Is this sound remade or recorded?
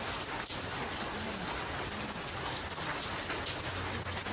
recorded